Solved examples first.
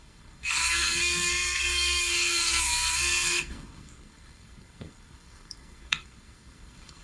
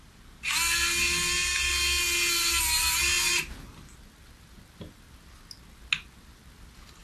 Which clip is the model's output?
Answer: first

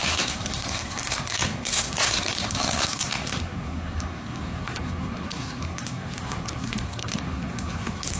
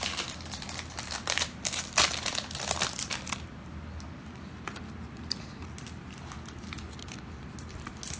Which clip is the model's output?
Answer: first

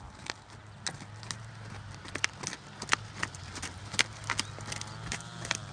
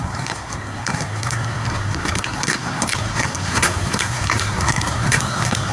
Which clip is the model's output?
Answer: second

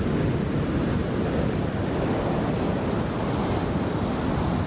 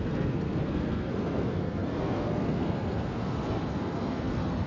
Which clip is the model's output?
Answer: second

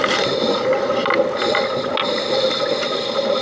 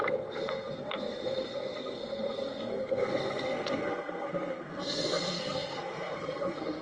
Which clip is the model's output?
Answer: second